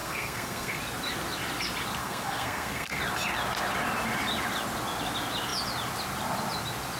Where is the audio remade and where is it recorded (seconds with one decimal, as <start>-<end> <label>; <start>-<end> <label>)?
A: 0.0-0.8 remade; 0.8-2.0 recorded; 2.0-3.0 remade; 3.0-7.0 recorded